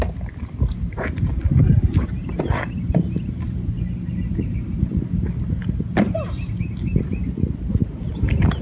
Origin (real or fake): real